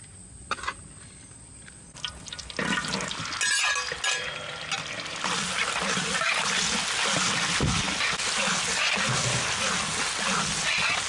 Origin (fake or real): real